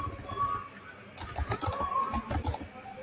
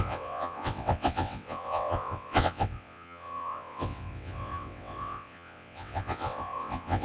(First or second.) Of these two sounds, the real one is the first